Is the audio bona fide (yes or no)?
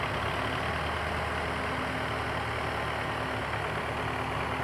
yes